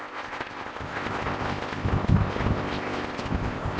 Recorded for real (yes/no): no